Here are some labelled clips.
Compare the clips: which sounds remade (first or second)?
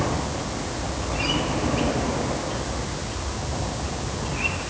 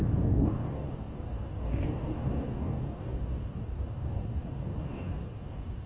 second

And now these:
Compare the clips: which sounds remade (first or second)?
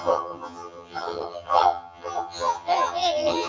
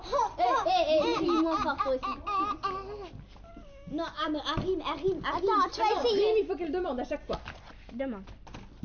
first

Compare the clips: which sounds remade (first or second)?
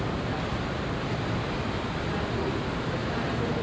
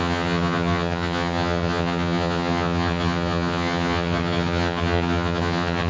second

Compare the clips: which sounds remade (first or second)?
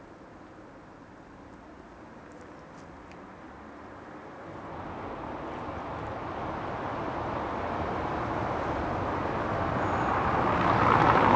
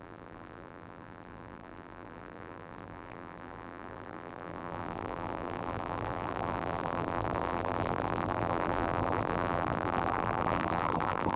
second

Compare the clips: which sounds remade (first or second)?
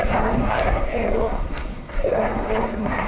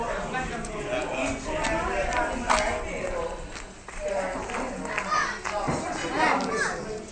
first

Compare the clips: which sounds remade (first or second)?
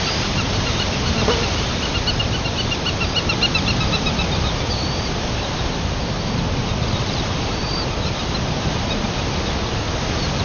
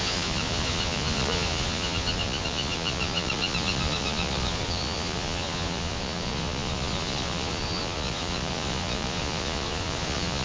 second